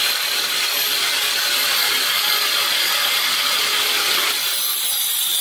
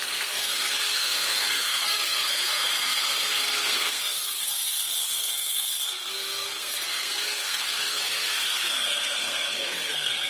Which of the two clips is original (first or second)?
first